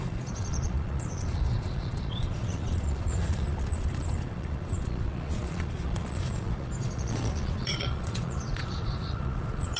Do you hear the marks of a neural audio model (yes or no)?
yes